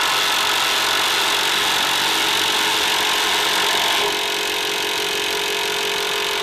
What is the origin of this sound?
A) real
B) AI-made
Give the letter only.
A